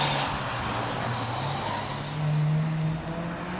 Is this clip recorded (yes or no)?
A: yes